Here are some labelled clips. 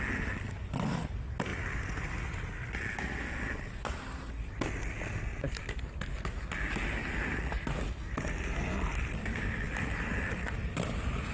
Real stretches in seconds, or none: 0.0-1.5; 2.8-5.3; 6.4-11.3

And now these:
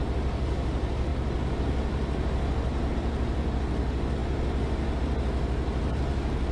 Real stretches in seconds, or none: 0.0-6.5

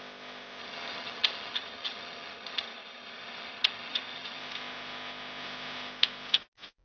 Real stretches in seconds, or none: 0.0-0.6; 4.4-6.8